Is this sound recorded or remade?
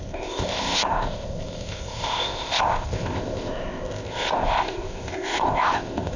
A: remade